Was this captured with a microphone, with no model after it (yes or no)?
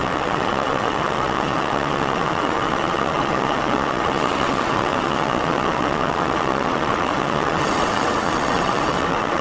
no